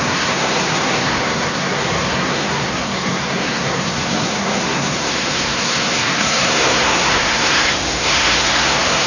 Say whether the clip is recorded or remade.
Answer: remade